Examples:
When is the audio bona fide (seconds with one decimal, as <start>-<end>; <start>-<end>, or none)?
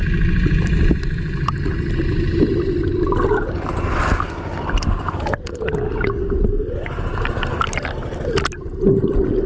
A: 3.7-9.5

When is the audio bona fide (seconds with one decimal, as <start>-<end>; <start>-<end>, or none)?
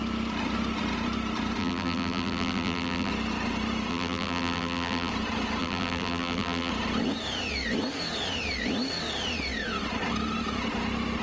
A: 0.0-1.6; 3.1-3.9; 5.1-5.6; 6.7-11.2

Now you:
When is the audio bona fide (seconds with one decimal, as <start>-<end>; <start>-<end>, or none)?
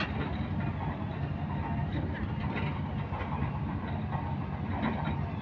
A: 0.0-1.8; 2.8-5.4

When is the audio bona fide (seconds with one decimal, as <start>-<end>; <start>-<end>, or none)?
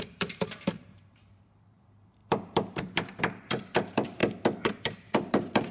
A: 4.2-4.7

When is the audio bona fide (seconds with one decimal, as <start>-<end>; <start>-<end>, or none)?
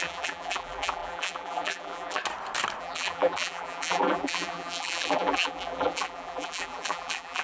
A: 2.2-2.8